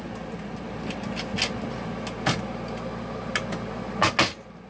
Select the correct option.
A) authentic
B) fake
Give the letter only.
A